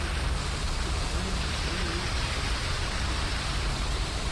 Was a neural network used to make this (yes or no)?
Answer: no